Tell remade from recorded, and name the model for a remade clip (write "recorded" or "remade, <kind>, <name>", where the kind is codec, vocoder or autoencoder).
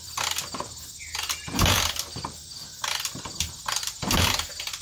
recorded